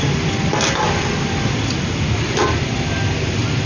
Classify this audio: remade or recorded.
recorded